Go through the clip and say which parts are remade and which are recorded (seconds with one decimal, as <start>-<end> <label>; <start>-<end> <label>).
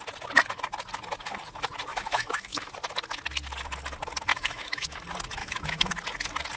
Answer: 0.0-1.9 recorded; 1.9-2.7 remade; 2.7-4.3 recorded; 4.3-5.0 remade; 5.0-5.4 recorded; 5.4-5.9 remade; 5.9-6.6 recorded